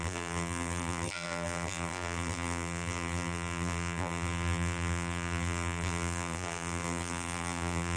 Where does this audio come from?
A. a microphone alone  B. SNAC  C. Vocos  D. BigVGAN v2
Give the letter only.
D